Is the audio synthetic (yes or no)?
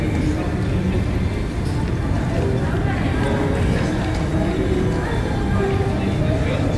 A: no